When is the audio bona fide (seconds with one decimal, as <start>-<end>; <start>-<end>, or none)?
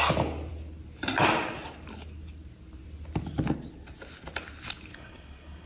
0.0-4.9